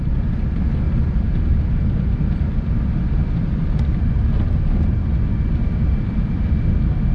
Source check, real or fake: fake